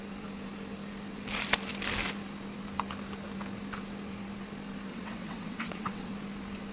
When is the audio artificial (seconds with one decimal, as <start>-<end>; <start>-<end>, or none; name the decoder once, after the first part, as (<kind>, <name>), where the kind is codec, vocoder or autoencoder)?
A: 4.9-6.1 (vocoder, WaveNeXt)